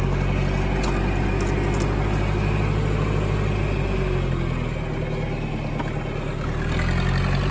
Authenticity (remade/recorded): recorded